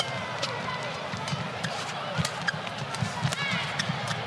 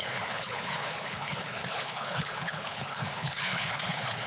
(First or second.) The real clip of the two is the first